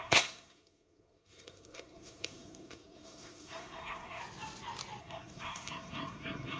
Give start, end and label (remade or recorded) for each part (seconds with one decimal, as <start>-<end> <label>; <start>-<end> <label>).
0.0-4.2 remade; 4.2-5.0 recorded; 5.0-6.6 remade